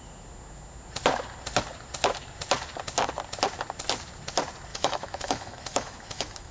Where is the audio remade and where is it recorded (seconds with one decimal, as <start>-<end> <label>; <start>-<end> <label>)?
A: 0.0-4.7 recorded; 4.7-6.5 remade

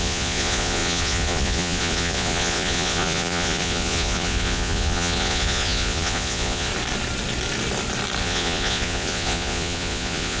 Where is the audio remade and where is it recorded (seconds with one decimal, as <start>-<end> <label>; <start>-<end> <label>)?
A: 0.0-6.7 remade; 6.7-8.2 recorded; 8.2-10.4 remade

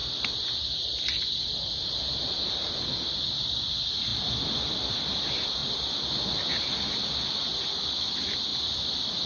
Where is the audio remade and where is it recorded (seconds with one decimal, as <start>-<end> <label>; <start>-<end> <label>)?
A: 0.0-5.6 remade; 5.6-7.8 recorded; 7.8-9.3 remade

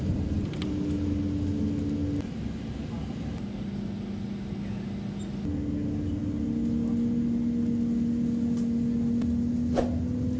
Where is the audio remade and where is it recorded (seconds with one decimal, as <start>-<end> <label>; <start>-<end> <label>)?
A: 0.0-10.4 recorded

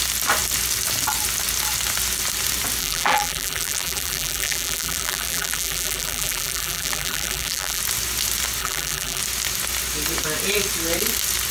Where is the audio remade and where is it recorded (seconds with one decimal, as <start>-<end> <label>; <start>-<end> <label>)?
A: 0.0-2.8 recorded; 2.8-7.8 remade; 7.8-8.6 recorded; 8.6-9.2 remade; 9.2-11.5 recorded